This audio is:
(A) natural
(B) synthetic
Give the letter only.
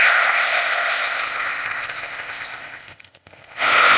B